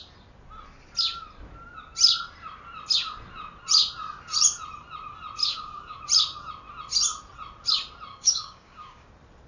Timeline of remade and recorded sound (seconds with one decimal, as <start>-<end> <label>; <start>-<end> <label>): 0.0-5.4 recorded; 5.4-6.0 remade; 6.0-8.1 recorded; 8.1-9.1 remade; 9.1-9.5 recorded